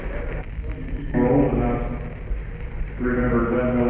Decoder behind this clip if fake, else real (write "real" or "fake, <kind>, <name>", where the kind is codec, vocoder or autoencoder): real